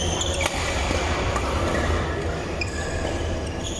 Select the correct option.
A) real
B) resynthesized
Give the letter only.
B